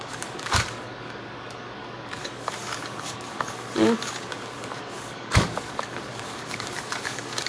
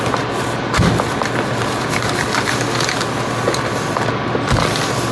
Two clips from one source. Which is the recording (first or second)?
second